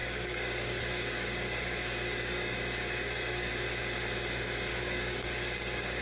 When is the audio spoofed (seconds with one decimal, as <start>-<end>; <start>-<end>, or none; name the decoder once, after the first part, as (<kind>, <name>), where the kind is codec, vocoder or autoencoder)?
0.0-3.5 (codec, DAC); 4.7-6.0